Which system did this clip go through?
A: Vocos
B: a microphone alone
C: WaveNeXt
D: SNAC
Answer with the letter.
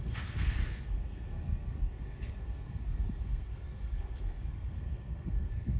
D